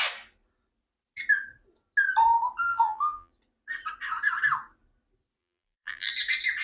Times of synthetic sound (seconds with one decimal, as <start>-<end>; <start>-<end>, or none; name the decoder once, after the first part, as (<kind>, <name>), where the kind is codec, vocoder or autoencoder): 2.7-3.3 (vocoder, BigVGAN v2); 5.4-6.1